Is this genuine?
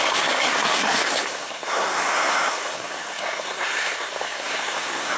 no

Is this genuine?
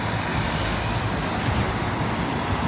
yes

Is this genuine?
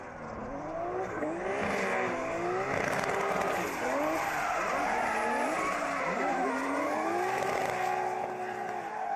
yes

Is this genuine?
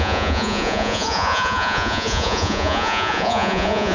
no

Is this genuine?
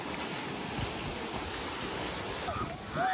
yes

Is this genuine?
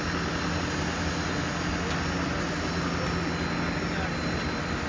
yes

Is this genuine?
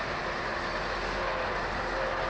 yes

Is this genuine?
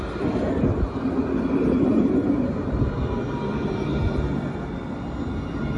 yes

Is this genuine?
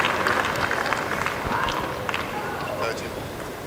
yes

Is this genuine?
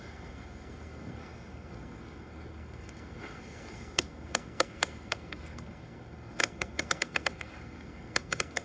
no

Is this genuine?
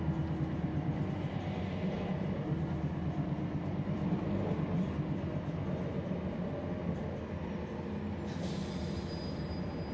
yes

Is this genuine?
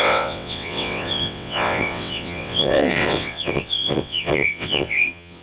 no